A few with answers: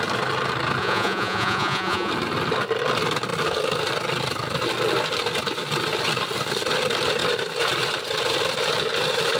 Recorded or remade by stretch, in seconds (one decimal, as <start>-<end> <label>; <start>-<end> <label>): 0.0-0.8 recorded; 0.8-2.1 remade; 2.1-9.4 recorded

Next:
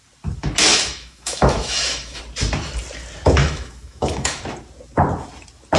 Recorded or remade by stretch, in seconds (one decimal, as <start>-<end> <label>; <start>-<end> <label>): 0.0-0.7 recorded; 0.7-2.2 remade; 2.2-3.4 recorded; 3.4-4.4 remade; 4.4-5.8 recorded

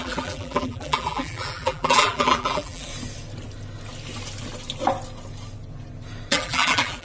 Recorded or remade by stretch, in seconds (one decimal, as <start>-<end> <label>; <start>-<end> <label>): 0.0-2.9 remade; 2.9-6.3 recorded; 6.3-7.0 remade

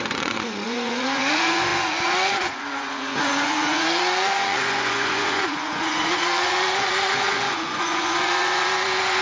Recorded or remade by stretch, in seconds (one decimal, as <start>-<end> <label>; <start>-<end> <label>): 0.0-9.2 remade

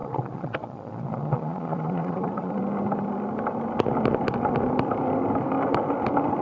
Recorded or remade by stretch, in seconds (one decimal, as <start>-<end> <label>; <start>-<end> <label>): 0.0-2.6 remade; 2.6-6.4 recorded

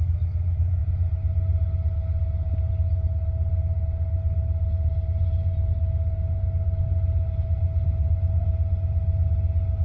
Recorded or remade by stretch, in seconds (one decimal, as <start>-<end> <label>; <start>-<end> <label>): 0.0-9.8 recorded

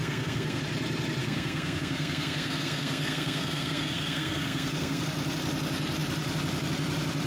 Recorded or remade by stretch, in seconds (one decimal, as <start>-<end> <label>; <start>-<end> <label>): 0.0-0.6 remade; 0.6-1.2 recorded; 1.2-5.0 remade; 5.0-7.3 recorded